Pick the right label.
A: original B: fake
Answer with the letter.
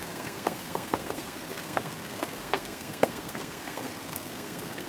B